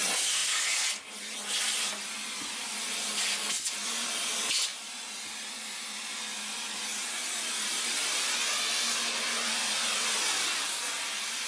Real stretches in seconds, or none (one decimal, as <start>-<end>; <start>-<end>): 0.0-11.5